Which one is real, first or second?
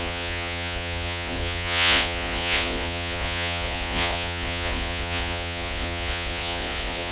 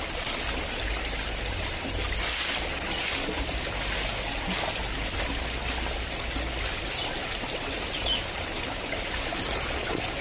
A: second